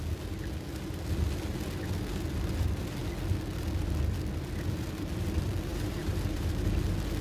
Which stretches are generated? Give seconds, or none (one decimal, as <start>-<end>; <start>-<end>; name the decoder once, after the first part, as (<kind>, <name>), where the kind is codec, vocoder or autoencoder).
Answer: 5.7-6.5 (vocoder, BigVGAN v2)

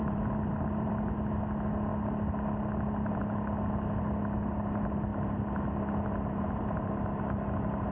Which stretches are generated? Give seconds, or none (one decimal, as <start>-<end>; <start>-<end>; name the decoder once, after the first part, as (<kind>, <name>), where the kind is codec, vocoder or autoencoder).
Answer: 0.0-0.9 (vocoder, BigVGAN v2)

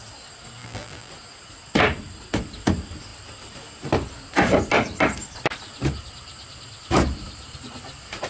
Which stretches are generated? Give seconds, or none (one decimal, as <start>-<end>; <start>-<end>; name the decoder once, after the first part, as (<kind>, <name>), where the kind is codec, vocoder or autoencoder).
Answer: 0.6-1.1 (vocoder, BigVGAN v2)

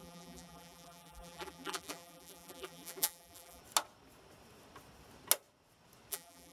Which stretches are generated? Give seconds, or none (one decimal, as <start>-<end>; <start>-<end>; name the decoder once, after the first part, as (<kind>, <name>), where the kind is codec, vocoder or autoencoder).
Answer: 0.0-3.6 (vocoder, BigVGAN v2); 6.1-6.5

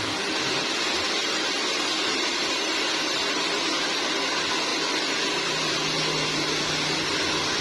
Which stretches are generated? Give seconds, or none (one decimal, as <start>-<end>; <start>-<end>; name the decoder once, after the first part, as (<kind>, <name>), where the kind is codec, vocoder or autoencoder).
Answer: 1.2-3.6 (vocoder, BigVGAN v2)

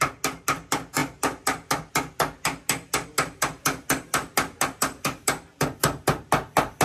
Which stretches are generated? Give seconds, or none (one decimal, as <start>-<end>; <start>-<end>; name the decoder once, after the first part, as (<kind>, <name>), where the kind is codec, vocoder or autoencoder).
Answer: none